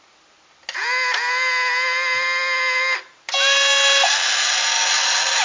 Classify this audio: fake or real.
real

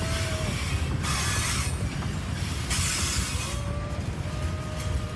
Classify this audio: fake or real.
real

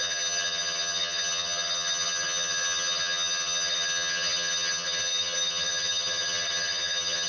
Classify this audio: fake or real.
fake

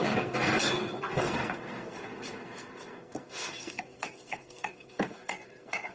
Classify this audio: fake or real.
fake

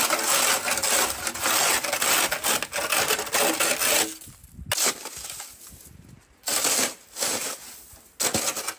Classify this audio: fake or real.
real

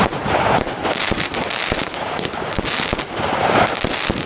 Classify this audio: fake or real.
real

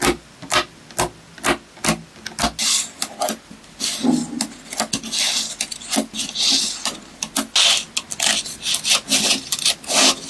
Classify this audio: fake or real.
real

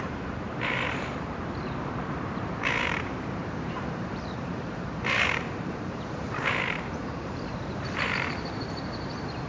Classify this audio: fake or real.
fake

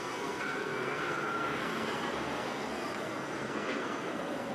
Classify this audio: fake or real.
fake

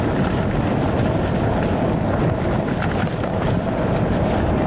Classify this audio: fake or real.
real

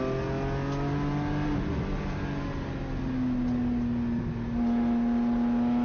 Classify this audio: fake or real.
real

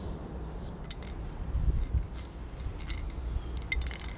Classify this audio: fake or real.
real